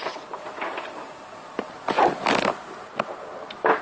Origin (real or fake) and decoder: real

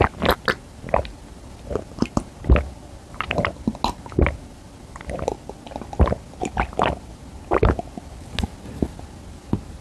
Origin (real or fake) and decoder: real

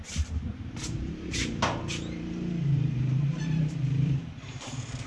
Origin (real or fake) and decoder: fake, vocoder, BigVGAN v2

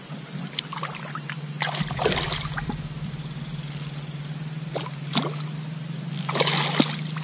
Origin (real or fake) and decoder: real